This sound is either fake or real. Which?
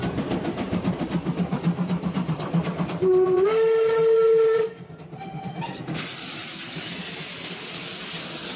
real